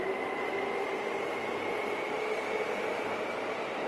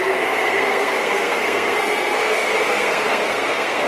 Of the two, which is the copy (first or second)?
second